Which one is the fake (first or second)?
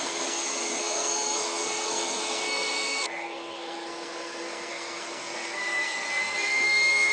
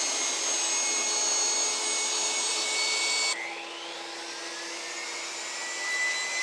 first